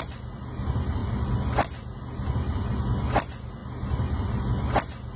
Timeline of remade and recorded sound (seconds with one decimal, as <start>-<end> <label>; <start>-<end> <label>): 0.0-5.2 recorded